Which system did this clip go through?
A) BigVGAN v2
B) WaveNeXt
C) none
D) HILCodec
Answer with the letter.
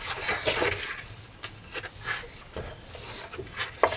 C